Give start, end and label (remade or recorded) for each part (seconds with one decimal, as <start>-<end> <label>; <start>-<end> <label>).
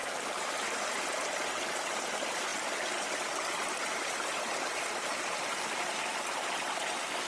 0.0-0.6 remade; 0.6-7.3 recorded